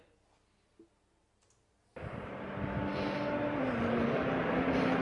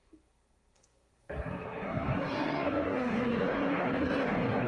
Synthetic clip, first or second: second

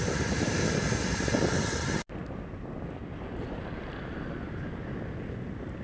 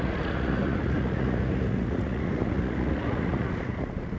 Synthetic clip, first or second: second